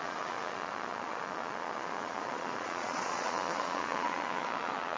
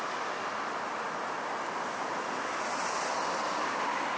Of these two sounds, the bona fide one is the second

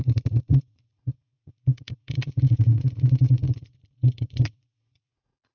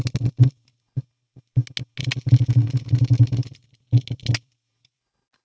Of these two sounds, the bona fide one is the second